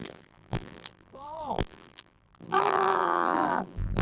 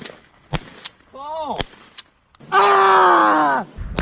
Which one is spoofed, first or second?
first